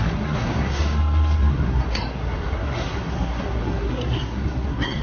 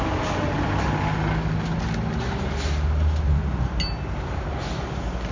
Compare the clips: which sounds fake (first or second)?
first